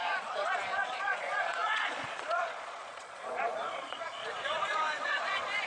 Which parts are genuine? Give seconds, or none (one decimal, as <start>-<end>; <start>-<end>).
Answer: none